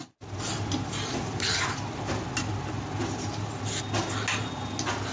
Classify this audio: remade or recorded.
recorded